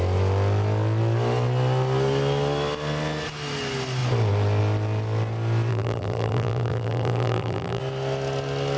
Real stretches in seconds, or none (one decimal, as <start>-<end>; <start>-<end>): 0.0-5.7; 7.8-8.8